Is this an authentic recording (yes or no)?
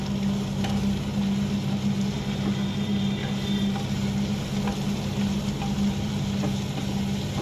yes